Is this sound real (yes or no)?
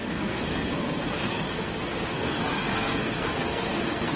no